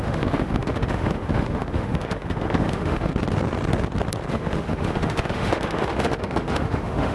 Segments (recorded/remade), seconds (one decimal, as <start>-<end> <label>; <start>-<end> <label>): 0.0-3.1 remade; 3.1-4.3 recorded; 4.3-7.1 remade

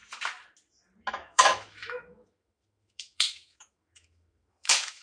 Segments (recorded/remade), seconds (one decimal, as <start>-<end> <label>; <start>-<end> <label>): 0.0-1.1 recorded; 1.1-5.0 remade

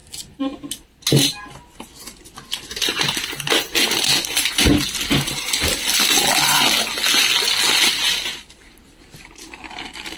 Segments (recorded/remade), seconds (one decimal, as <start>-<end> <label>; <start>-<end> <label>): 0.0-10.2 recorded

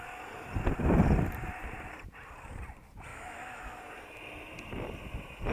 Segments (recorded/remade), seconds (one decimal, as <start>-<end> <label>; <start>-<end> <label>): 0.0-3.1 recorded; 3.1-3.8 remade; 3.8-5.5 recorded

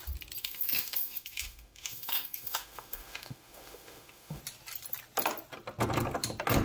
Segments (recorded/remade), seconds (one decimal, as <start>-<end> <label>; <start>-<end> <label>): 0.0-0.4 recorded; 0.4-4.4 remade; 4.4-6.6 recorded

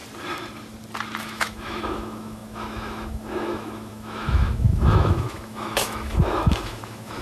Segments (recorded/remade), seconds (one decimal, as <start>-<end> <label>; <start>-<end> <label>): 0.0-1.2 recorded; 1.2-7.2 remade